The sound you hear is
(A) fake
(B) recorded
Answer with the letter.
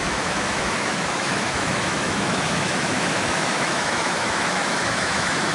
A